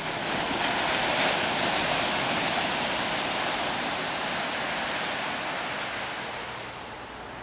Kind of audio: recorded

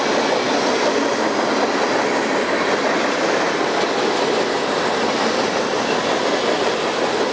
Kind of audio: recorded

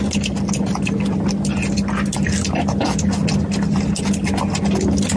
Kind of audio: recorded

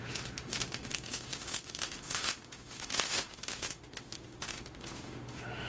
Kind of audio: remade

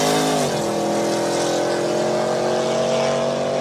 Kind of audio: recorded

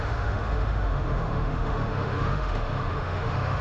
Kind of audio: remade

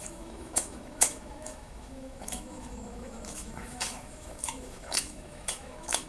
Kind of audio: remade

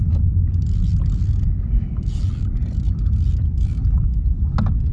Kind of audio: recorded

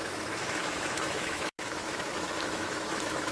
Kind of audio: remade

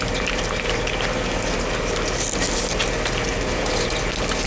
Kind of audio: recorded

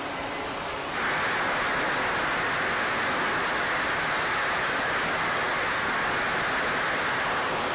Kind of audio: recorded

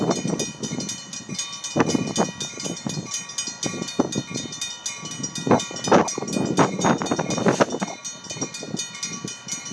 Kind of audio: recorded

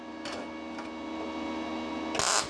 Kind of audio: recorded